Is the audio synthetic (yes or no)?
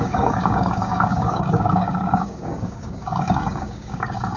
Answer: yes